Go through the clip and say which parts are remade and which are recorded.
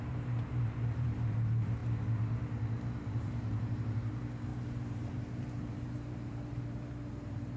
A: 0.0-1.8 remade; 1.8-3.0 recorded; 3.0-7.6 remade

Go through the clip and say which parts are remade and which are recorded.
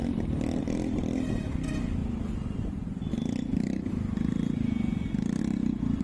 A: 0.0-2.0 recorded; 2.0-3.1 remade; 3.1-6.0 recorded